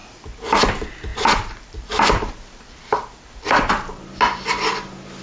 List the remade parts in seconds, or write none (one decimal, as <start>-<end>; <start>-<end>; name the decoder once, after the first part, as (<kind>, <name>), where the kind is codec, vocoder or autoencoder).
0.0-0.6 (vocoder, BigVGAN v2); 1.1-4.2